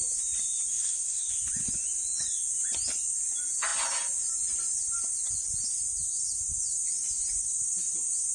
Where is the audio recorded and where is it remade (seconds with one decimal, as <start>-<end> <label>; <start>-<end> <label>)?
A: 0.0-0.7 recorded; 0.7-1.3 remade; 1.3-8.3 recorded